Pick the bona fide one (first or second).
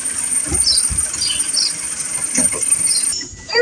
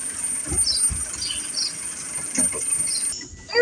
second